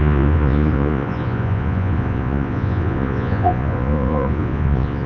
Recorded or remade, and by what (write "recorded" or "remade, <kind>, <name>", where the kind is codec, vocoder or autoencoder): remade, vocoder, Vocos